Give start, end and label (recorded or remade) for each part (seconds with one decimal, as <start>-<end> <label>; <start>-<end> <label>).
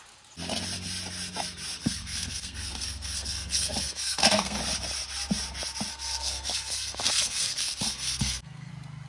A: 0.0-1.8 recorded; 1.8-4.6 remade; 4.6-5.9 recorded; 5.9-8.7 remade; 8.7-9.1 recorded